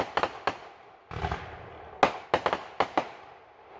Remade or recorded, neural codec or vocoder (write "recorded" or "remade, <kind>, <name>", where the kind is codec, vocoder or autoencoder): recorded